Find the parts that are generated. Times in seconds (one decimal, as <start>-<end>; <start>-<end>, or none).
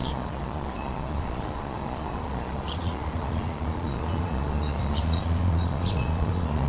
0.0-6.7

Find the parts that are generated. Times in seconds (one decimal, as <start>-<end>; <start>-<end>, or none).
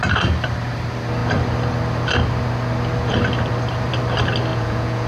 4.5-5.1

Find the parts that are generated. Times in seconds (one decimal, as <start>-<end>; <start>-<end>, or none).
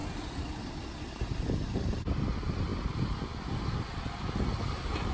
none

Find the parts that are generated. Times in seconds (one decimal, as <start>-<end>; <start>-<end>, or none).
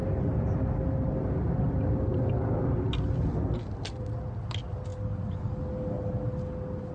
none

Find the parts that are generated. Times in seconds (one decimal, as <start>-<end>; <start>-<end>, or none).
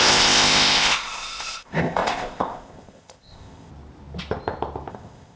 0.0-3.7; 4.9-5.4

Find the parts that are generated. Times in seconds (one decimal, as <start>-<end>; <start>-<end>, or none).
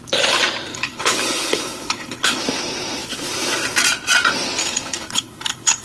0.7-2.4; 4.6-5.8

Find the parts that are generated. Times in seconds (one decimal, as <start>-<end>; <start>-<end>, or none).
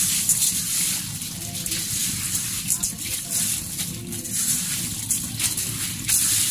none